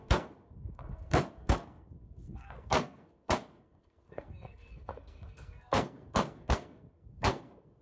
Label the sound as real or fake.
fake